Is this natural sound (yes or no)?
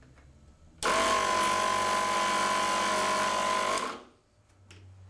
yes